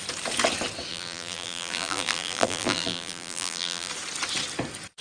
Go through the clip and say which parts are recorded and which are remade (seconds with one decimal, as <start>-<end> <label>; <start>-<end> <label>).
0.0-0.9 recorded; 0.9-3.9 remade; 3.9-5.0 recorded